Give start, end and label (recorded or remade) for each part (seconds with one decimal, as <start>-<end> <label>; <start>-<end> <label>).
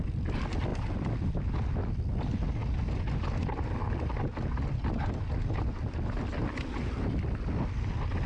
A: 0.0-8.3 recorded